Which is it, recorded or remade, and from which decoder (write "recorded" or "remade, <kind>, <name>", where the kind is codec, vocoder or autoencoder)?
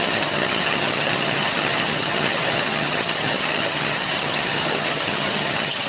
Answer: remade, vocoder, HiFi-GAN